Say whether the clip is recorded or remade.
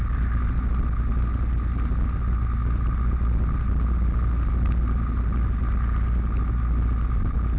recorded